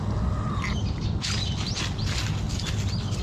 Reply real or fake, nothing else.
real